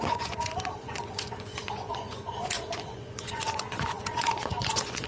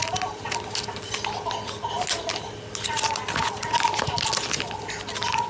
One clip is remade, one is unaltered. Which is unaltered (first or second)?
second